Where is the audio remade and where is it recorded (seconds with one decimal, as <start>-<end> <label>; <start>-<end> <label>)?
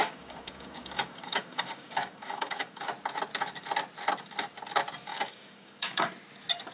0.0-2.9 remade; 2.9-5.1 recorded; 5.1-6.1 remade; 6.1-6.7 recorded